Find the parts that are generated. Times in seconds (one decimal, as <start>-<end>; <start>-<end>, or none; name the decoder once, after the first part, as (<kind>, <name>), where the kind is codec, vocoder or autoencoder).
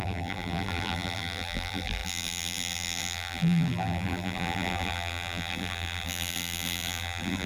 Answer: 0.0-7.5 (vocoder, BigVGAN v2)